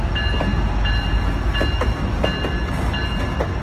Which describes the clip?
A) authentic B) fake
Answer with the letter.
A